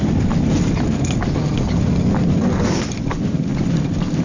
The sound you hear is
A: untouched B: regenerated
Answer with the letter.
A